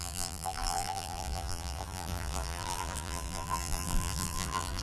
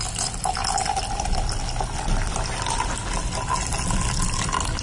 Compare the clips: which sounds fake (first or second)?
first